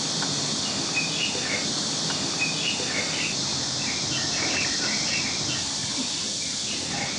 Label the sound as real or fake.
real